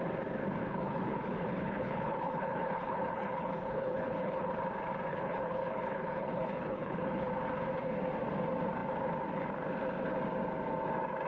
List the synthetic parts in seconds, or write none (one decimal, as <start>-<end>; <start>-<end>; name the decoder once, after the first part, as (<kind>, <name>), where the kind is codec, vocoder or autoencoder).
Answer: 0.6-4.5 (codec, HILCodec); 5.1-7.3